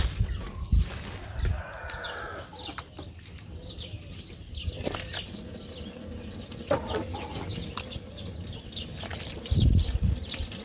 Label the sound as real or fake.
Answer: real